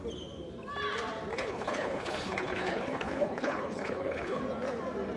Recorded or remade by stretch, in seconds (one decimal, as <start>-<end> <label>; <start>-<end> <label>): 0.0-1.3 recorded; 1.3-4.4 remade; 4.4-5.2 recorded